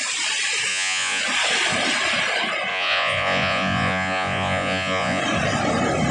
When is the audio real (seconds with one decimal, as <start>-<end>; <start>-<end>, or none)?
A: 0.0-0.7; 1.2-2.7; 5.2-6.1